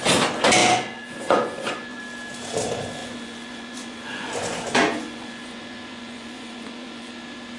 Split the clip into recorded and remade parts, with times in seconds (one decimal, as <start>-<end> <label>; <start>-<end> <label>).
0.0-0.6 recorded; 0.6-2.0 remade; 2.0-3.0 recorded; 3.0-7.1 remade; 7.1-7.6 recorded